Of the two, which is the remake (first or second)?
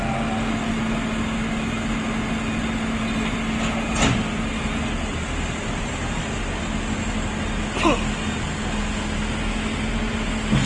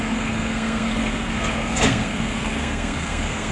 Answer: second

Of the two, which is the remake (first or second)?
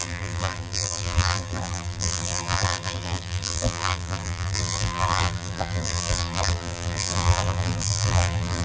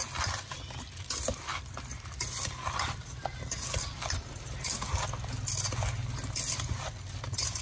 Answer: first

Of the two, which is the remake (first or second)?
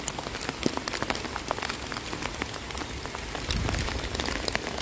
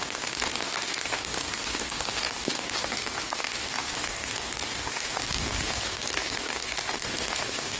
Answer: second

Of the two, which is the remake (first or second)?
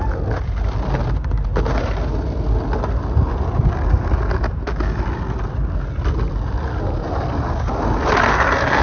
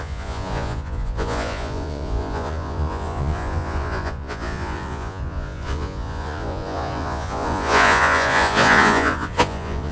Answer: second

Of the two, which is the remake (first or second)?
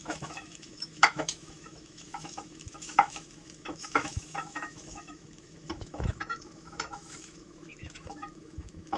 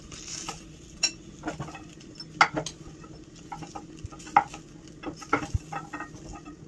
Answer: first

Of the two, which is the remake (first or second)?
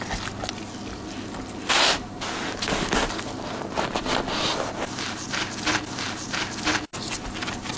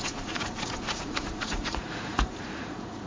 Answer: second